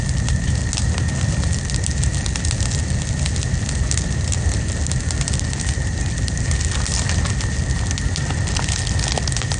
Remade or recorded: recorded